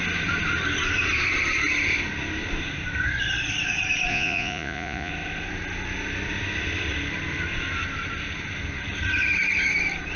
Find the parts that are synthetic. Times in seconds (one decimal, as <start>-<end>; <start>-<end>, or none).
4.1-5.1